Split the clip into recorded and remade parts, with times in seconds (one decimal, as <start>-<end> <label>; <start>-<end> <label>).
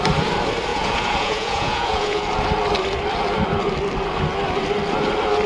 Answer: 0.0-0.7 recorded; 0.7-2.2 remade; 2.2-5.5 recorded